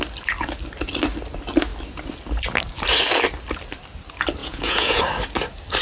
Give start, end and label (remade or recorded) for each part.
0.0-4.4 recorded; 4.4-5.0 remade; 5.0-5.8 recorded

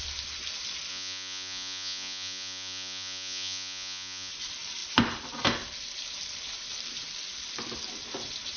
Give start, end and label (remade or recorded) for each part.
0.0-0.9 recorded; 0.9-4.3 remade; 4.3-8.6 recorded

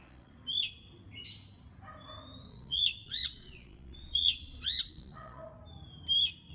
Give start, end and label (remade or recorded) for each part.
0.0-0.4 remade; 0.4-2.5 recorded; 2.5-5.5 remade; 5.5-6.5 recorded

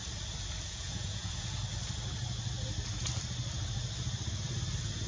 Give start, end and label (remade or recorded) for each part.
0.0-0.7 recorded; 0.7-1.6 remade; 1.6-5.1 recorded

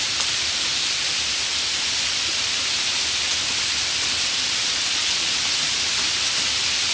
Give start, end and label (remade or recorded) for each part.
0.0-4.6 recorded; 4.6-5.3 remade; 5.3-6.9 recorded